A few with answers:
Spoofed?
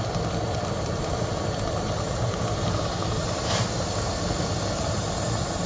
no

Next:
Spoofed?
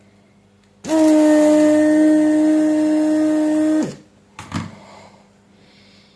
no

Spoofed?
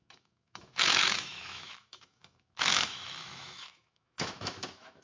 yes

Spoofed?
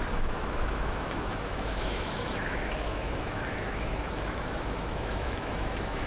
yes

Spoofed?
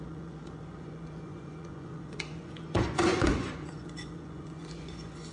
yes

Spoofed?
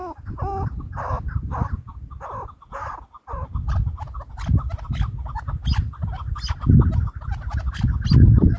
no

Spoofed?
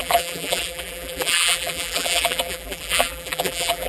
yes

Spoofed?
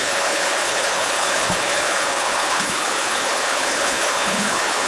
yes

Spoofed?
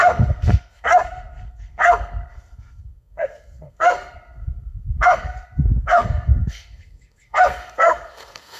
yes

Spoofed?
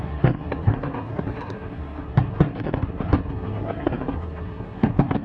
yes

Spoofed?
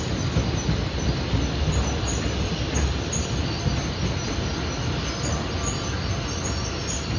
no